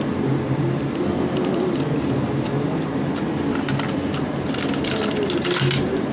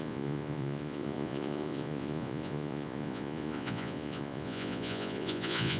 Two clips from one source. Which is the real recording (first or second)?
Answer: first